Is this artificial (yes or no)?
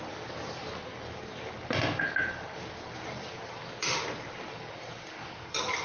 no